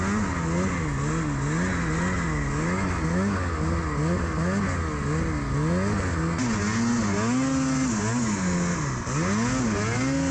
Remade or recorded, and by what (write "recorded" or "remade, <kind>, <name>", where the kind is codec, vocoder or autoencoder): recorded